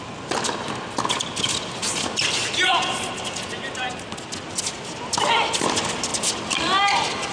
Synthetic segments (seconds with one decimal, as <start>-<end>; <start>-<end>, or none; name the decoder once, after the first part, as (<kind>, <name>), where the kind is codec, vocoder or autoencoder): none